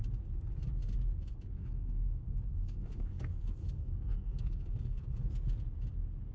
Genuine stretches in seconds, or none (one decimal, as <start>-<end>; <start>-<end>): 0.0-1.6; 5.4-6.3